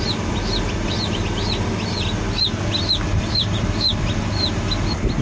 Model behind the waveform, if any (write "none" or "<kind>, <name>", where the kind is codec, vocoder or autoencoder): none